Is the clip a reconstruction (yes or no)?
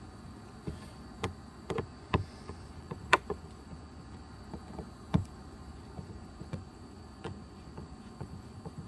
yes